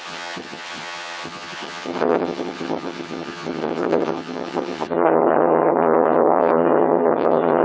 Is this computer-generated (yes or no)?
yes